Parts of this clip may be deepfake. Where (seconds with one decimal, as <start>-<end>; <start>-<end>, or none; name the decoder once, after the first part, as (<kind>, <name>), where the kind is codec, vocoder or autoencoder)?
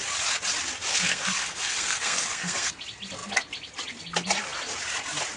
0.9-2.7 (codec, SNAC)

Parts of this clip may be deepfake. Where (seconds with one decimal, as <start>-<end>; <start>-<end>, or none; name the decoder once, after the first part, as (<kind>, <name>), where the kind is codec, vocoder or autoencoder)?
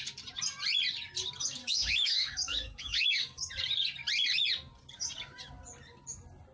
1.6-3.5 (codec, DAC)